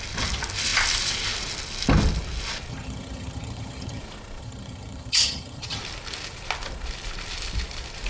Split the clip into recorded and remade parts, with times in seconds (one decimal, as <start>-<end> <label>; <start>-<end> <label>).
0.0-2.7 recorded; 2.7-4.0 remade; 4.0-4.4 recorded; 4.4-5.8 remade; 5.8-8.1 recorded